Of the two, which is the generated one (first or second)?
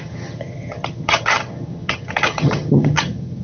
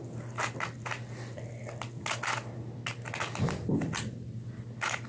first